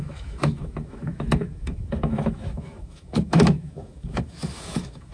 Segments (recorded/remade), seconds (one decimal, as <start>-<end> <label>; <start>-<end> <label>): 0.0-5.1 remade